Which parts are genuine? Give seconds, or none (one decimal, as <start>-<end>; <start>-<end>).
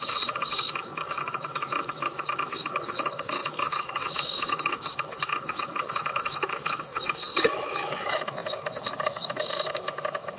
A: none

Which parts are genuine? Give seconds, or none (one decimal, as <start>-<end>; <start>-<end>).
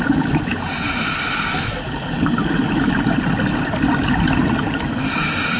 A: 0.5-1.7; 2.4-5.6